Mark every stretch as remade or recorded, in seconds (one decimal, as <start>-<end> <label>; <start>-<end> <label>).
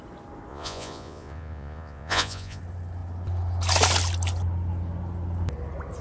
0.0-0.5 recorded; 0.5-2.6 remade; 2.6-6.0 recorded